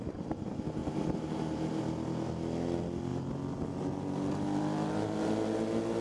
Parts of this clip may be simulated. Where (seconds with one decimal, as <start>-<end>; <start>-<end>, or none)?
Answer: none